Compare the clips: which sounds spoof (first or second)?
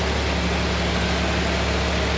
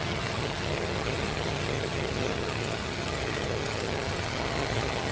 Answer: second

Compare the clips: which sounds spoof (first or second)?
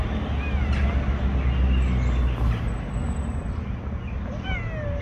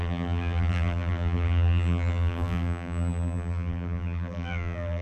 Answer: second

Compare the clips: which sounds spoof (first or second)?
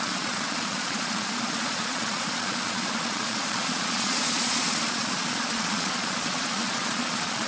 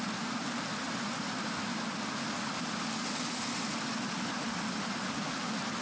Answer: first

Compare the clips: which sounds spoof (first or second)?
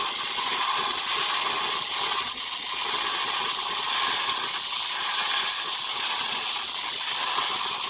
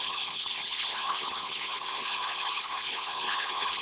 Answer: second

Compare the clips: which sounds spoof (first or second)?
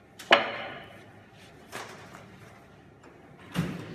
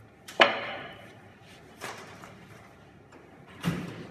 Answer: second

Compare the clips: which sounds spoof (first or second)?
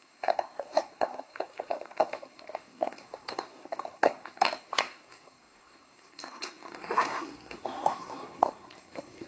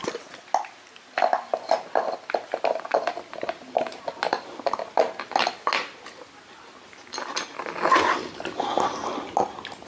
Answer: first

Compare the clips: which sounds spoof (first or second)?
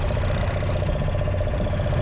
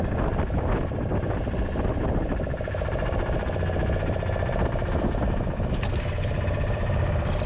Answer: second